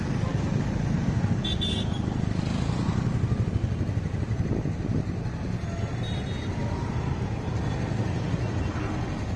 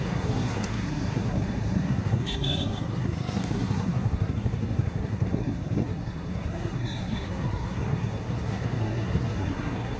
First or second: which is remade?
second